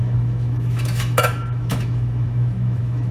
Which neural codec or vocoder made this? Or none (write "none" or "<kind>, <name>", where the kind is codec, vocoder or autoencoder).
autoencoder, DAC-VAE